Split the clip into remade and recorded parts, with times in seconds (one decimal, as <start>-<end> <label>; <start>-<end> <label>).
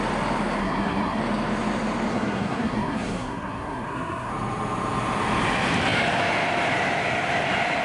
0.0-0.6 recorded; 0.6-1.2 remade; 1.2-2.1 recorded; 2.1-4.3 remade; 4.3-7.8 recorded